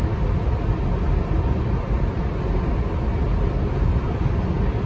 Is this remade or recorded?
recorded